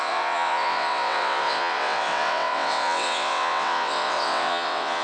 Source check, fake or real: fake